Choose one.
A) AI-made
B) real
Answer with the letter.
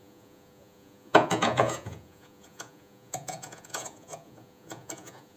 A